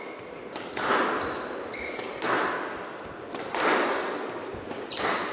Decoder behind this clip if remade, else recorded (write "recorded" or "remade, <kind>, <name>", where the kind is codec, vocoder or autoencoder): recorded